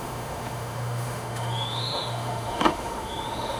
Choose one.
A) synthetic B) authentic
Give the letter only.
A